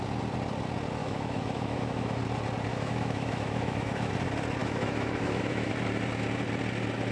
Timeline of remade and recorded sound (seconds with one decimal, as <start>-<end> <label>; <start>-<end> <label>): 0.0-1.0 recorded; 1.0-2.2 remade; 2.2-2.7 recorded; 2.7-4.1 remade; 4.1-4.6 recorded; 4.6-5.7 remade; 5.7-7.1 recorded